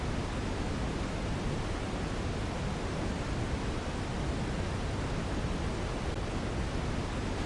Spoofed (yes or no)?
no